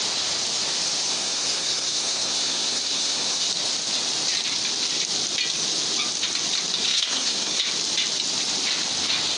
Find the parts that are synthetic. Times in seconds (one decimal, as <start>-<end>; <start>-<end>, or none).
1.1-3.5; 6.9-7.6

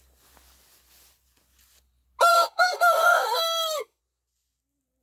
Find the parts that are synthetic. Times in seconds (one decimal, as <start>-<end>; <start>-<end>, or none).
2.3-4.0

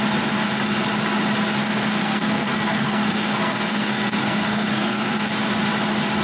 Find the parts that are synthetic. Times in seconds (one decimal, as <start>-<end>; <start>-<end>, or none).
1.6-5.3

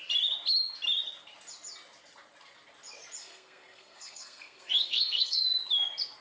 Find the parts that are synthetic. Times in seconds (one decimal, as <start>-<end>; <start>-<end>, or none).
3.2-5.4

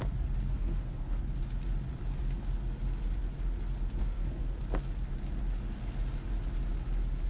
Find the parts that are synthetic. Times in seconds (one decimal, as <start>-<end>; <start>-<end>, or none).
0.5-1.2; 4.0-4.6

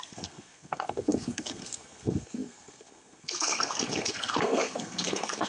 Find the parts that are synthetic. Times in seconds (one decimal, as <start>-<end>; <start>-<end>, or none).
0.0-5.5

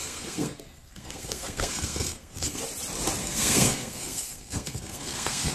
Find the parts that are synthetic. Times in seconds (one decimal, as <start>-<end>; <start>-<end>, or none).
0.0-2.6; 3.2-5.5

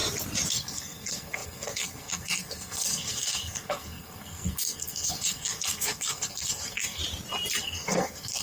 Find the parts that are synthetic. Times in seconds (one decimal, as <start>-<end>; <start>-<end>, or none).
0.5-7.0; 7.6-8.4